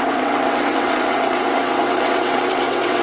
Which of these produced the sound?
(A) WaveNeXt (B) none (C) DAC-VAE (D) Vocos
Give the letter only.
A